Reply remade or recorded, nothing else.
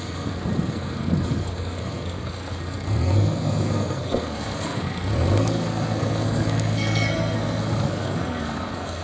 remade